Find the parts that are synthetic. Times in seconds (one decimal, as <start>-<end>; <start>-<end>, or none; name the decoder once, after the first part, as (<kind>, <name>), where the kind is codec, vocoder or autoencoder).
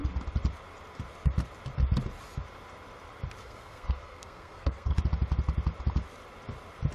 3.4-5.0 (codec, SNAC)